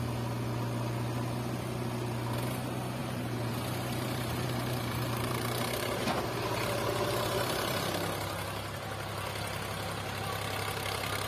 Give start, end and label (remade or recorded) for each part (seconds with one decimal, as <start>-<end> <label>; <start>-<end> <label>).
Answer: 0.0-3.0 recorded; 3.0-6.2 remade; 6.2-11.3 recorded